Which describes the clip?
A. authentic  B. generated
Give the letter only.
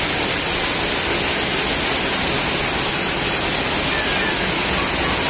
A